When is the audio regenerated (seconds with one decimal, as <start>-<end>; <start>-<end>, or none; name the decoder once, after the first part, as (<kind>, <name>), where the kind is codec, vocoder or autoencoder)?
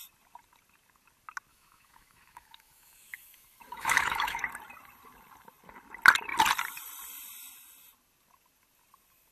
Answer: 1.5-4.4 (autoencoder, DAC-VAE)